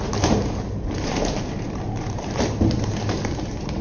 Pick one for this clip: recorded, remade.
remade